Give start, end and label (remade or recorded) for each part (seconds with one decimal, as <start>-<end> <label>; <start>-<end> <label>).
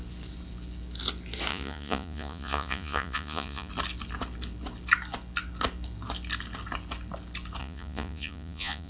0.0-1.5 recorded; 1.5-3.7 remade; 3.7-7.6 recorded; 7.6-8.9 remade